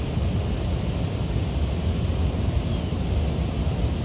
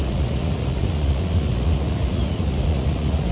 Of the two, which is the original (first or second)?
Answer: first